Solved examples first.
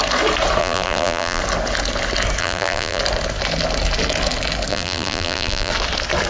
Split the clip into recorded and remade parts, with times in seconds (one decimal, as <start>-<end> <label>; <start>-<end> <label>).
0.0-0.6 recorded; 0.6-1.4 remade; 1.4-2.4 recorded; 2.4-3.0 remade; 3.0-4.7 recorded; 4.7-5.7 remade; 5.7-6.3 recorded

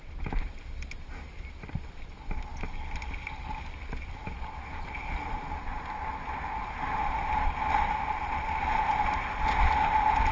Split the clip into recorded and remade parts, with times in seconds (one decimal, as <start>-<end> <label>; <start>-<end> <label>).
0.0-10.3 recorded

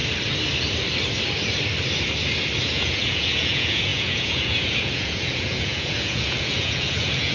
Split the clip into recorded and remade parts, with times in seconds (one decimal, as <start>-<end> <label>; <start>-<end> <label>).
0.0-2.6 recorded; 2.6-7.3 remade

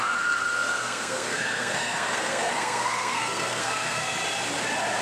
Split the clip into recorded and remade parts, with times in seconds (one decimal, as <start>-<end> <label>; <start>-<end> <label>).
0.0-4.2 remade; 4.2-5.0 recorded